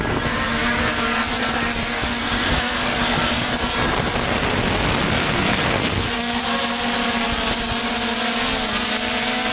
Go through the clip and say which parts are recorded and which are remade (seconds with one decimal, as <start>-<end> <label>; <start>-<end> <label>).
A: 0.0-2.1 recorded; 2.1-3.5 remade; 3.5-5.2 recorded; 5.2-6.4 remade; 6.4-9.5 recorded